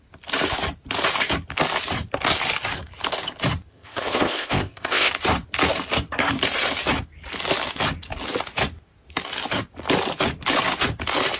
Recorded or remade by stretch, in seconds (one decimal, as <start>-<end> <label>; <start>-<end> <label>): 0.0-3.7 recorded; 3.7-5.1 remade; 5.1-11.4 recorded